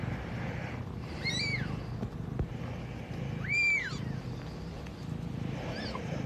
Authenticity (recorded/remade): recorded